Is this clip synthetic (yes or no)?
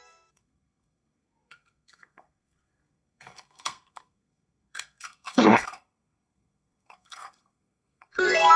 yes